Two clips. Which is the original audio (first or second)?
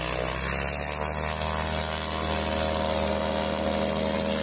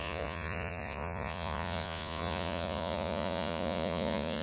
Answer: first